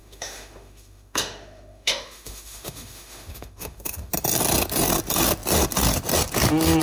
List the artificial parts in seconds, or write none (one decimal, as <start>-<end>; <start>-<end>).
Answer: 0.0-4.1